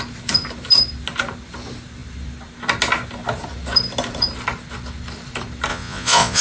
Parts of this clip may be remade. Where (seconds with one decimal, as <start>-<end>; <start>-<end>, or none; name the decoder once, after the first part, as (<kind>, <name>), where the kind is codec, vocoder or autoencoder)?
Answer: 5.7-6.4 (vocoder, Vocos)